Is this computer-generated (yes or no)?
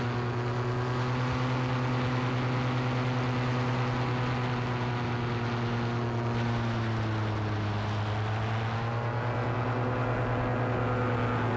no